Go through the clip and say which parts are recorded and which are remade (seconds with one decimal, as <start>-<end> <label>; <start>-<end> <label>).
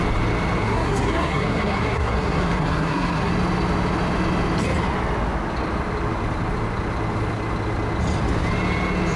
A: 0.0-0.6 recorded; 0.6-3.3 remade; 3.3-9.2 recorded